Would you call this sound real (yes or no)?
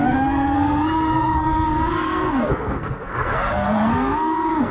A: no